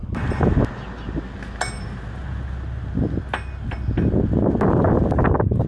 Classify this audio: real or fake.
real